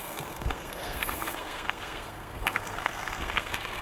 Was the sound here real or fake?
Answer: fake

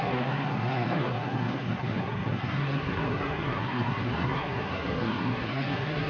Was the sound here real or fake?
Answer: fake